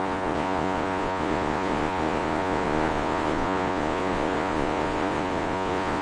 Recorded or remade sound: remade